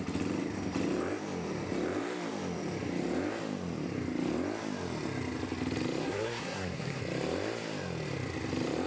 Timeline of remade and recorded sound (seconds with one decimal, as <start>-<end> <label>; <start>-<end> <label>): 0.0-6.0 recorded; 6.0-7.0 remade; 7.0-8.9 recorded